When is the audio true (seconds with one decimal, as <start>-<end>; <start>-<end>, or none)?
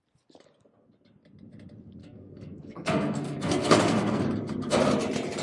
0.0-2.0; 4.2-5.4